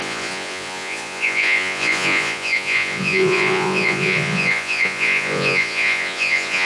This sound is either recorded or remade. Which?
remade